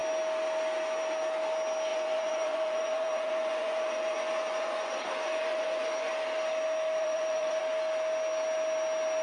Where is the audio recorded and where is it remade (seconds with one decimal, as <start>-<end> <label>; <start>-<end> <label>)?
0.0-1.9 recorded; 1.9-6.1 remade; 6.1-7.0 recorded; 7.0-7.6 remade; 7.6-9.2 recorded